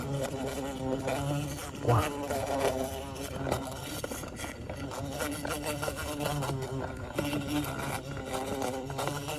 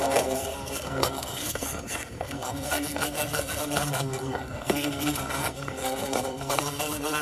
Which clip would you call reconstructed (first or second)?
second